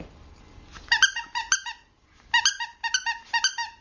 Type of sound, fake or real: real